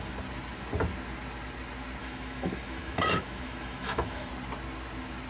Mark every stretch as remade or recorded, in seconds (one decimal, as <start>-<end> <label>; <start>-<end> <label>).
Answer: 0.0-2.0 recorded; 2.0-4.3 remade; 4.3-5.3 recorded